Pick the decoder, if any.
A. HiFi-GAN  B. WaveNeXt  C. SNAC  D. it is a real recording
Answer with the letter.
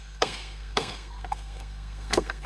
C